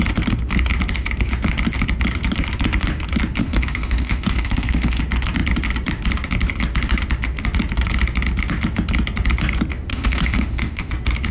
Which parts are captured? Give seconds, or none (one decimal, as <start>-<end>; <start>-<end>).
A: 0.0-3.4; 5.0-9.9; 10.9-11.3